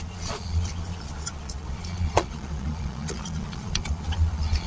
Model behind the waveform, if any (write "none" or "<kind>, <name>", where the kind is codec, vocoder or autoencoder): vocoder, Vocos